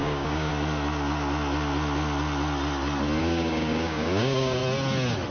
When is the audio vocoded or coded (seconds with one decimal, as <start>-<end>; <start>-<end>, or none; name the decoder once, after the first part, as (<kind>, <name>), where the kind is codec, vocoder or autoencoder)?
0.0-0.5 (codec, DAC); 3.2-4.6